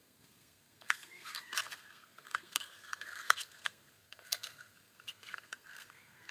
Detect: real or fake fake